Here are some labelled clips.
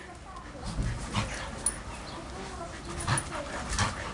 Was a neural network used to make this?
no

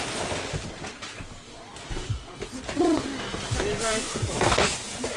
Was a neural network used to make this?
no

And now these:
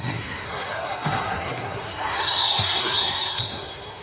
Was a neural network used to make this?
yes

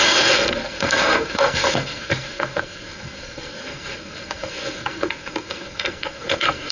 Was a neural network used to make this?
yes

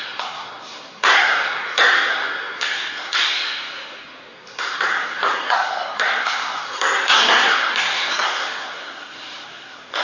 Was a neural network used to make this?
yes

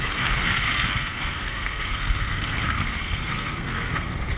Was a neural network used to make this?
yes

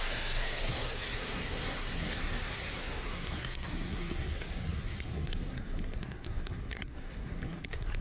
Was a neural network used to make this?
yes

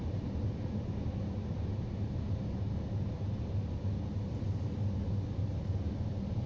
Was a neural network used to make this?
no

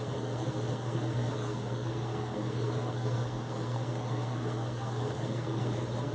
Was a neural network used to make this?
yes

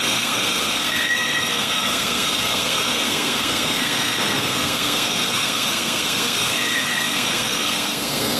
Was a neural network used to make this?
yes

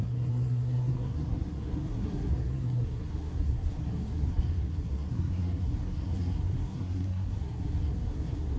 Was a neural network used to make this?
yes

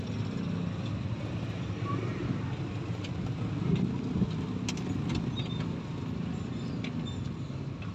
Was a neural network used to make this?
no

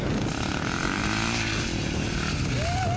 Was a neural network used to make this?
no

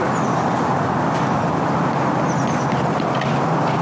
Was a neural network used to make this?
no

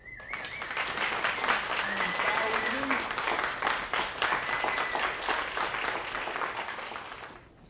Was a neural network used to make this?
no